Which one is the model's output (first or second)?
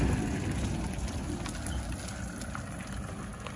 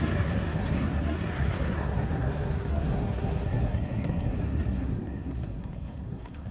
second